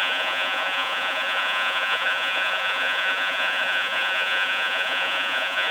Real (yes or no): no